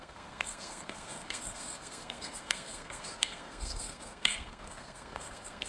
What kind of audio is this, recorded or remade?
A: remade